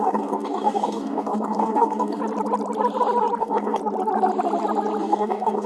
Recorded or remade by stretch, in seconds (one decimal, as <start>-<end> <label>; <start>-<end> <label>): 0.0-2.2 remade; 2.2-3.4 recorded; 3.4-3.8 remade; 3.8-5.0 recorded; 5.0-5.7 remade